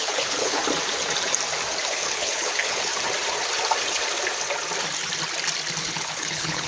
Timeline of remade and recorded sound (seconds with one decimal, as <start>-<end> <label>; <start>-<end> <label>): 0.0-0.6 remade; 0.6-1.9 recorded; 1.9-2.9 remade; 2.9-5.8 recorded; 5.8-6.7 remade